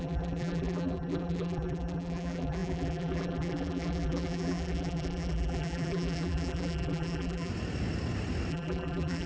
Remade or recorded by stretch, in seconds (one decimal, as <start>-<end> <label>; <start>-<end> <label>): 0.0-7.5 remade; 7.5-8.5 recorded; 8.5-9.3 remade

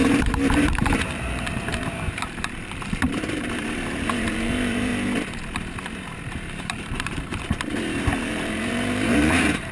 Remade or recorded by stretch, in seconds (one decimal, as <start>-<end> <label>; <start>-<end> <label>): 0.0-4.9 remade; 4.9-5.8 recorded; 5.8-7.3 remade; 7.3-8.3 recorded; 8.3-9.7 remade

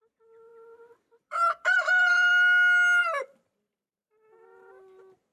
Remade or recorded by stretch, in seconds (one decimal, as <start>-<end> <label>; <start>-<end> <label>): 0.0-0.5 recorded; 0.5-2.3 remade; 2.3-3.0 recorded; 3.0-4.7 remade; 4.7-5.3 recorded

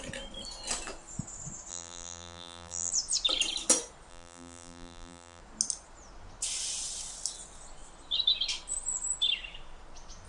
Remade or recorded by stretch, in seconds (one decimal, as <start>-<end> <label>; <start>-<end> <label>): 0.0-1.7 recorded; 1.7-2.9 remade; 2.9-4.1 recorded; 4.1-5.4 remade; 5.4-10.3 recorded

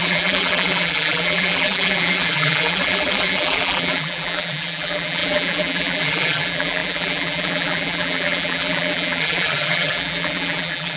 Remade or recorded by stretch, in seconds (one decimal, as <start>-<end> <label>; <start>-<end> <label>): 0.0-11.0 remade

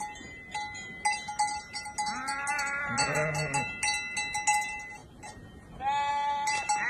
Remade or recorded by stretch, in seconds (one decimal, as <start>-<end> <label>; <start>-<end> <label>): 0.0-6.9 recorded

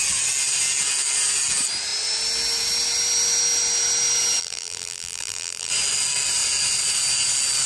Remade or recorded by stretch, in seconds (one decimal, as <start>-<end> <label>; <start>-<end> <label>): 0.0-4.4 recorded; 4.4-5.7 remade; 5.7-7.7 recorded